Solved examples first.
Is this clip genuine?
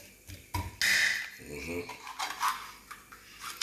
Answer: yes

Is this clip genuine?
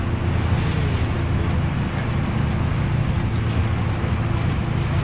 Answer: yes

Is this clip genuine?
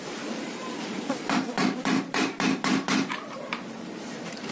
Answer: no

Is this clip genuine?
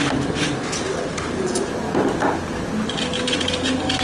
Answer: yes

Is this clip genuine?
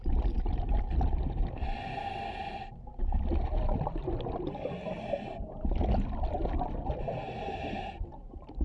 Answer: yes